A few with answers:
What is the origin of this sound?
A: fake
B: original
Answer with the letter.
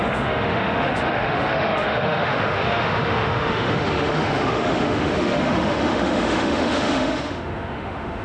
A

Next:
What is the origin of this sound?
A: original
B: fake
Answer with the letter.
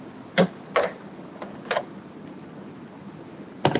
A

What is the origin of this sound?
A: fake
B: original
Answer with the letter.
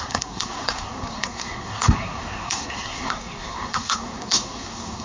A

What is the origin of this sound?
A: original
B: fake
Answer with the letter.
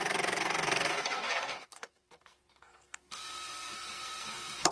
B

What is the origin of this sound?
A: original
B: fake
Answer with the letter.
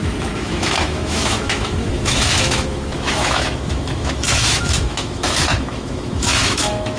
B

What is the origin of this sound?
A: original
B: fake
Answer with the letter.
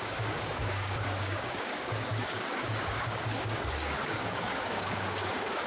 B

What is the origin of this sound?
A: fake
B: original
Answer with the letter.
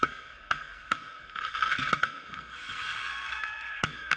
A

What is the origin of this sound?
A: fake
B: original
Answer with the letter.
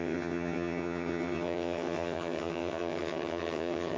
A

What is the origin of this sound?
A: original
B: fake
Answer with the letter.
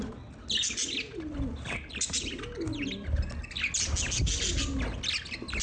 A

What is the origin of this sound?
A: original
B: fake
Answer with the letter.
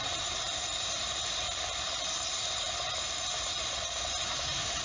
B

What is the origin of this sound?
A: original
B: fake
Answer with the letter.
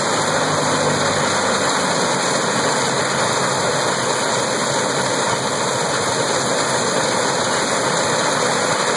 A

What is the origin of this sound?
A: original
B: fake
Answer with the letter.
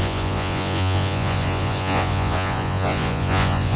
B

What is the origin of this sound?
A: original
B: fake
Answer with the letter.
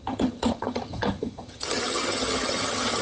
B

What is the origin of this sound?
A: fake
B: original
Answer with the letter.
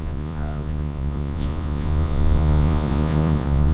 A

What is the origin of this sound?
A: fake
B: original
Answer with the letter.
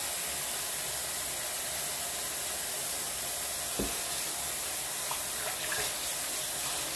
B